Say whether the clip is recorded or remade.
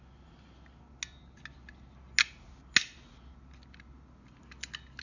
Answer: recorded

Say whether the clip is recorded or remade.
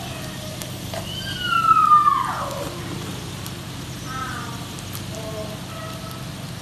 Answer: recorded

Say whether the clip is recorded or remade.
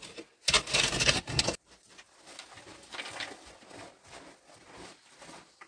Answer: recorded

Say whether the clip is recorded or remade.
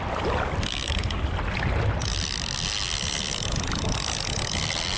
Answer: recorded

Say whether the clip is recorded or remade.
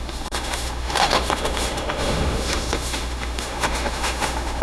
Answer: remade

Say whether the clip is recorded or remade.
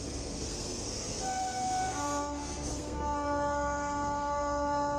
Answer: remade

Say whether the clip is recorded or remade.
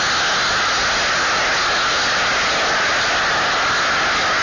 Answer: recorded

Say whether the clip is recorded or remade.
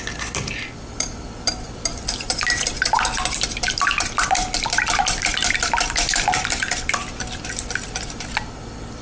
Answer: remade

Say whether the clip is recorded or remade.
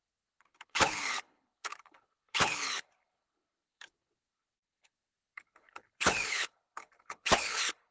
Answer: remade